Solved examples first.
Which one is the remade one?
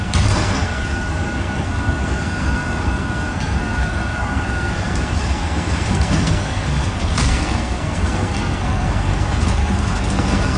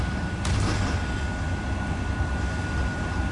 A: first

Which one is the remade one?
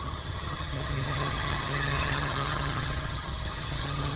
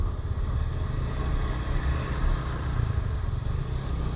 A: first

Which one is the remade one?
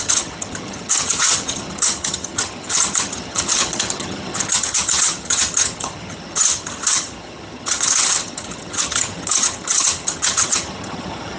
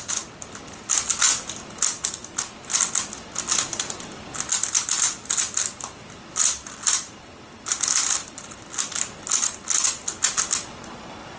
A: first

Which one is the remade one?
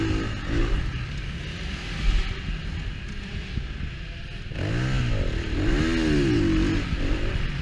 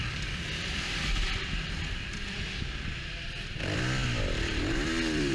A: second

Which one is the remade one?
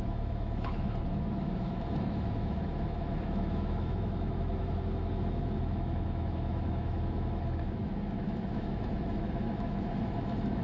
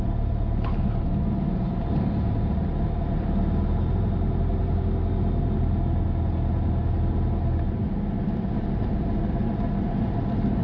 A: first